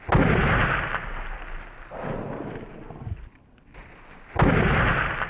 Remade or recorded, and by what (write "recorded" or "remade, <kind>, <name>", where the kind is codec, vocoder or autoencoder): recorded